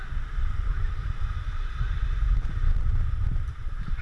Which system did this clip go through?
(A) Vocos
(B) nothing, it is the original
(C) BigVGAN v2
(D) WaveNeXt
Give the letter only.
C